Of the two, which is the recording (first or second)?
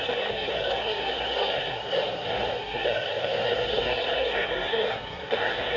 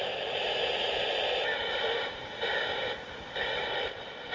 second